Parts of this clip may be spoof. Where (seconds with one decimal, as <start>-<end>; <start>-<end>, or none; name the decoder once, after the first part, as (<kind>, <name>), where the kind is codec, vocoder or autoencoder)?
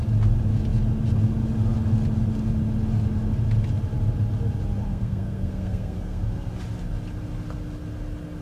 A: 4.9-6.5 (codec, SNAC)